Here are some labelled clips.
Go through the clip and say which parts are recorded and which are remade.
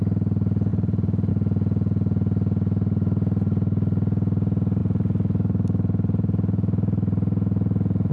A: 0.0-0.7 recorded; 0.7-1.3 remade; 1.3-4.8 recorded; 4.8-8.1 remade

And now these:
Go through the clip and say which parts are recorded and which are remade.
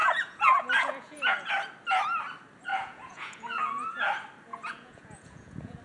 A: 0.0-1.5 remade; 1.5-2.7 recorded; 2.7-4.0 remade; 4.0-4.5 recorded; 4.5-5.8 remade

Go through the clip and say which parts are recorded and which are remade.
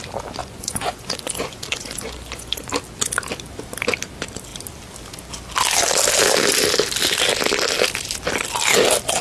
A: 0.0-0.4 recorded; 0.4-2.7 remade; 2.7-9.2 recorded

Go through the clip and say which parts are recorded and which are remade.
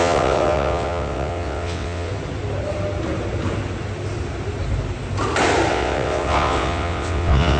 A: 0.0-2.1 remade; 2.1-5.7 recorded; 5.7-7.6 remade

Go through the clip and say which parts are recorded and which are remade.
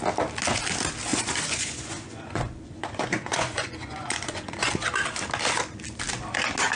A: 0.0-1.1 recorded; 1.1-4.7 remade; 4.7-6.7 recorded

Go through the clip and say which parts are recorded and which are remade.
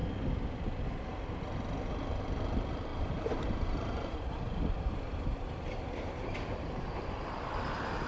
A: 0.0-2.9 recorded; 2.9-7.1 remade; 7.1-8.1 recorded